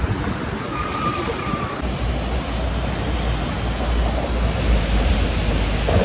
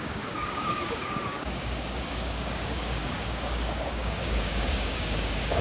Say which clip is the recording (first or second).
first